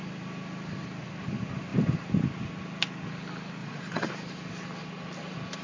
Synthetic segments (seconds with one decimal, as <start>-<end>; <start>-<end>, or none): 3.6-4.1